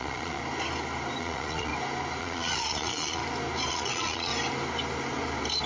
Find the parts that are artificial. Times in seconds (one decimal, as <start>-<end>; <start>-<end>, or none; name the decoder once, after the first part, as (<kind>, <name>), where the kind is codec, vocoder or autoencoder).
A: 0.0-0.4 (vocoder, Vocos); 1.2-1.7; 2.2-3.2; 3.7-4.3